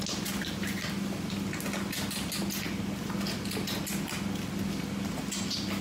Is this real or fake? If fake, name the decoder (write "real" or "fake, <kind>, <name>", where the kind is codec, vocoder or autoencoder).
real